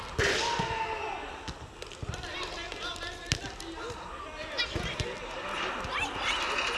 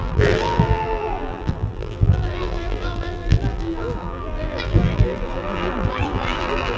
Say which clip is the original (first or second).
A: first